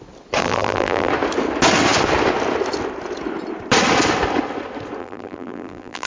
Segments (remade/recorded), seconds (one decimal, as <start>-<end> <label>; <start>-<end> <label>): 0.0-0.4 recorded; 0.4-1.1 remade; 1.1-5.0 recorded; 5.0-6.1 remade